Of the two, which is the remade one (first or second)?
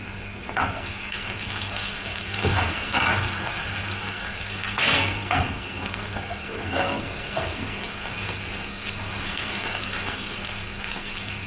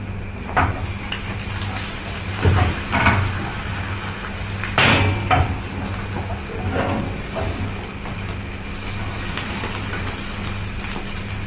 first